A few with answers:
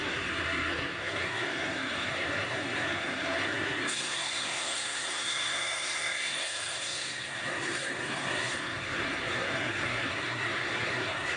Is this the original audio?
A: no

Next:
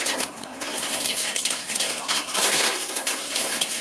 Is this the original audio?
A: no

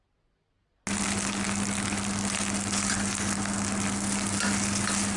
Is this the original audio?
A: yes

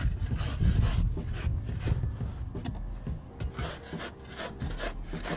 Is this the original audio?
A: yes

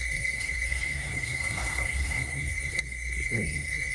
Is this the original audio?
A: no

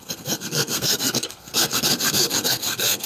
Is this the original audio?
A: no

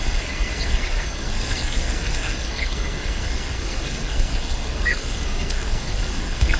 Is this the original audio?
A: no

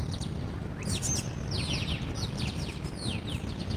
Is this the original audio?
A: yes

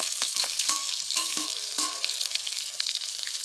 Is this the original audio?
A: no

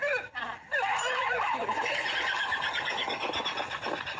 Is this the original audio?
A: yes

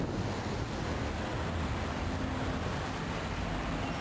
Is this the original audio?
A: yes